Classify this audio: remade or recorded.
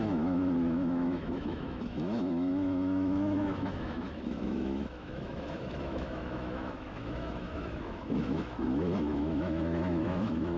remade